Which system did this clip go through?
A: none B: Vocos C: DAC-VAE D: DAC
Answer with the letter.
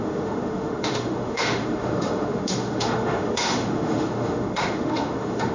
C